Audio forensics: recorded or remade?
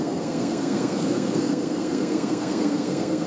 remade